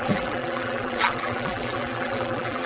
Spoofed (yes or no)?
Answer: yes